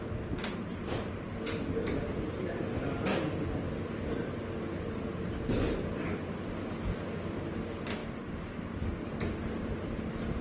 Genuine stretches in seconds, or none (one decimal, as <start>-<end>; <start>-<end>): 0.0-10.4